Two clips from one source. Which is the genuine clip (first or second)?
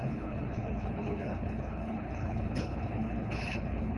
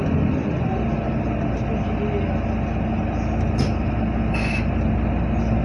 second